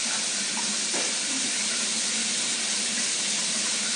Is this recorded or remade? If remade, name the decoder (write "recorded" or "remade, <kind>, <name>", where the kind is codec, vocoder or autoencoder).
recorded